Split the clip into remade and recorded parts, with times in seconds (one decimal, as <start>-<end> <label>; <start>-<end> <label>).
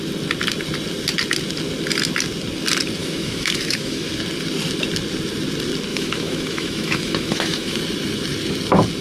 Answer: 0.0-3.0 recorded; 3.0-4.1 remade; 4.1-5.9 recorded; 5.9-7.8 remade; 7.8-9.0 recorded